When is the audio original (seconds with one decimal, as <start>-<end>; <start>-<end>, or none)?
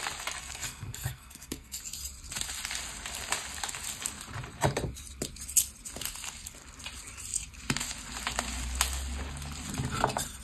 0.0-0.4; 1.8-10.4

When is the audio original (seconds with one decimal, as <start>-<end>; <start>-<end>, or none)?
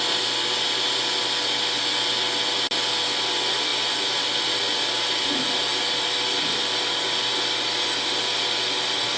0.0-9.2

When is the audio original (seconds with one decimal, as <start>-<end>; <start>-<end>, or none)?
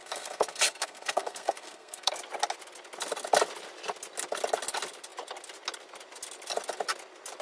2.1-7.4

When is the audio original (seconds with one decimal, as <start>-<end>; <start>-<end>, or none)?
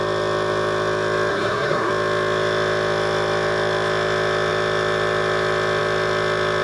0.0-1.3; 1.9-6.6